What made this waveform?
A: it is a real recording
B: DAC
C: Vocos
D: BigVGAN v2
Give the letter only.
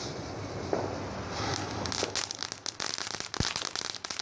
A